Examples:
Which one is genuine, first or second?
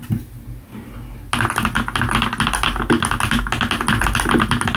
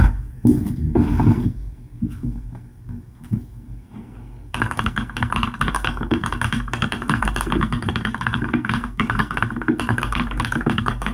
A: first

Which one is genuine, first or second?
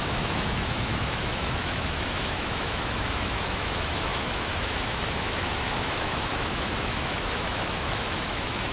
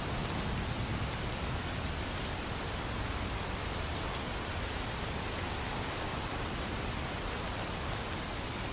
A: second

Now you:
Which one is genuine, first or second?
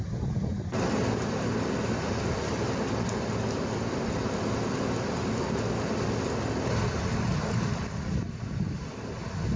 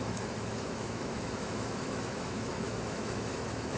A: first